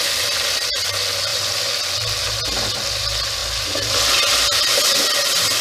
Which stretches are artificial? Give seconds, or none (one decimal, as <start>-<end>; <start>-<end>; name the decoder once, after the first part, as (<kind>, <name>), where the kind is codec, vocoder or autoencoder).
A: none